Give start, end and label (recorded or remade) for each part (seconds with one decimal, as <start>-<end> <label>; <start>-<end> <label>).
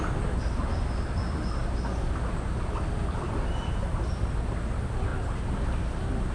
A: 0.0-6.3 recorded